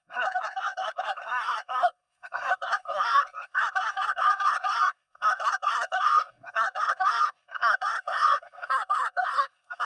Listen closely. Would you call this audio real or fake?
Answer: fake